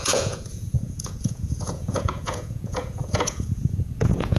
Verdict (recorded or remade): remade